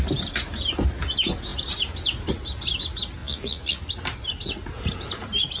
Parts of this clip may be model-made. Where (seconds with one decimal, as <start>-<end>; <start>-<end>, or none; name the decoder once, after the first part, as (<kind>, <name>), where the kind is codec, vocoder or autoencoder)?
3.2-3.8 (vocoder, Vocos)